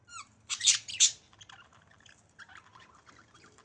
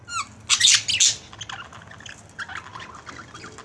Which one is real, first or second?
second